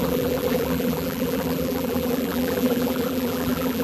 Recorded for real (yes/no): no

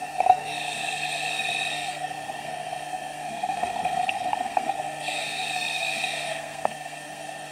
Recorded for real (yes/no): no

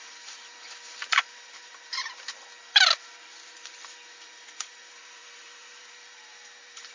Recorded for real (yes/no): no